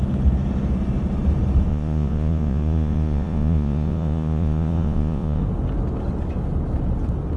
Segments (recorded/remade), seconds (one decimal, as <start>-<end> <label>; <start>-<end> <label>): 0.0-1.7 recorded; 1.7-5.4 remade; 5.4-7.4 recorded